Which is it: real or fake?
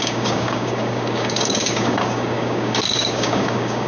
fake